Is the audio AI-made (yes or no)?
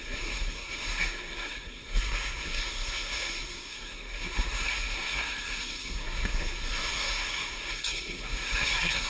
yes